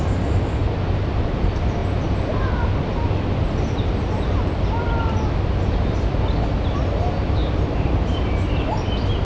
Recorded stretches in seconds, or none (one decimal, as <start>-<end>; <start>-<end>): 0.0-7.4; 8.5-9.2